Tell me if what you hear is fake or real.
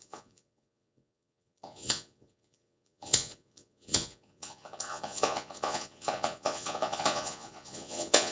fake